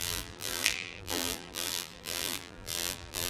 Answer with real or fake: fake